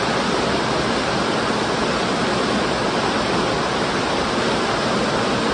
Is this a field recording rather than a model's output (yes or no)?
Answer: yes